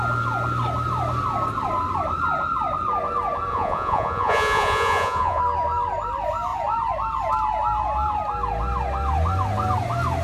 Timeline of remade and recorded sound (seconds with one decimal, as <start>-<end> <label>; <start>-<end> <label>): 0.0-3.5 recorded; 3.5-5.4 remade; 5.4-10.2 recorded